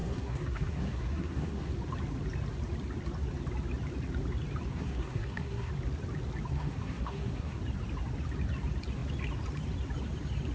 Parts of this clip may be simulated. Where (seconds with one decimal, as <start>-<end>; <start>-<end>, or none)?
0.0-1.7; 4.7-5.7; 6.5-7.6